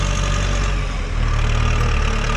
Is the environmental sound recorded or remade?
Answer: recorded